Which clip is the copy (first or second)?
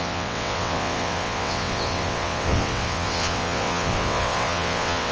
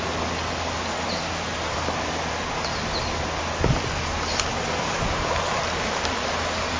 first